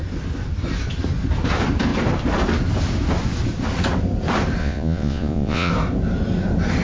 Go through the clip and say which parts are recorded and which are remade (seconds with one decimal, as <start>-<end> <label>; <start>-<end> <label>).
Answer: 0.0-4.6 recorded; 4.6-5.7 remade; 5.7-6.8 recorded